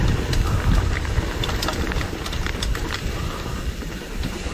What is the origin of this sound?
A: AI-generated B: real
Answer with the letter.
B